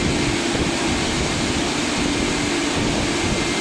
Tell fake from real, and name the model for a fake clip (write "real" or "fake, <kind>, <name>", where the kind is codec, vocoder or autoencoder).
real